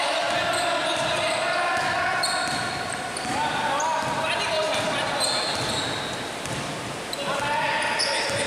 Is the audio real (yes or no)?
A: yes